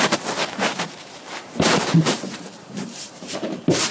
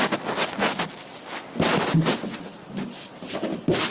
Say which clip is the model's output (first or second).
first